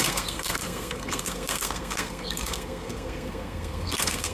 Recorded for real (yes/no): no